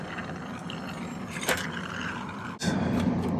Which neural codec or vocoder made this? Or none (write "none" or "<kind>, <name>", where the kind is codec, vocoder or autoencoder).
vocoder, BigVGAN v2